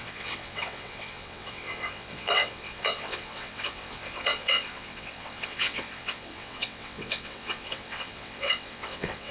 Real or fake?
fake